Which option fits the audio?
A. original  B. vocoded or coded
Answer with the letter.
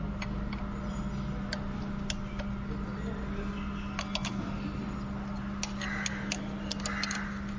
A